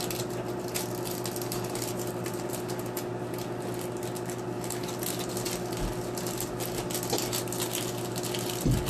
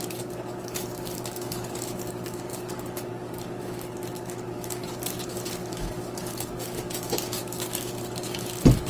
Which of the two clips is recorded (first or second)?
first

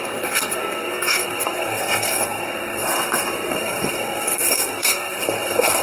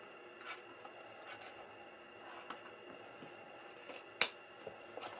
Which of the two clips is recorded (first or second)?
second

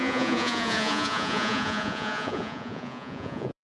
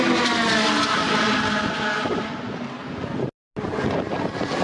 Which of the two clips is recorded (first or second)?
second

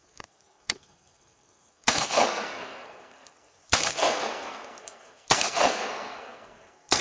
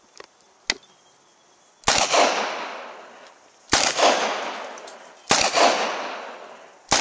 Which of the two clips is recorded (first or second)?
second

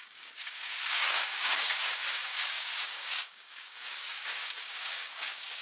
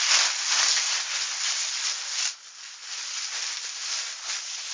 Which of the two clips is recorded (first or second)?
second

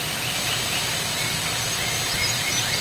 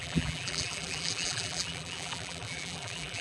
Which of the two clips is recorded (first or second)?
first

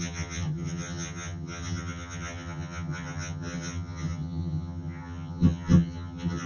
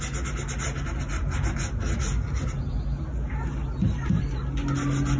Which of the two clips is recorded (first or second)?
second